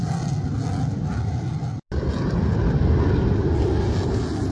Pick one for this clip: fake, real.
real